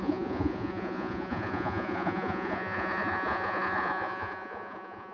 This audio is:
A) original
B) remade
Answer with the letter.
B